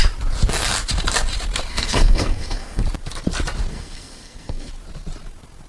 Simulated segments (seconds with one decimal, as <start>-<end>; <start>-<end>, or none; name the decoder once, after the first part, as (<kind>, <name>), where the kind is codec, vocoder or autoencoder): 1.7-2.8 (codec, SNAC); 3.7-4.7